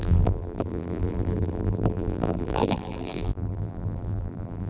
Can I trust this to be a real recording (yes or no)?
no